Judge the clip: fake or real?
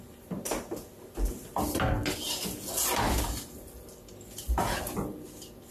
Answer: real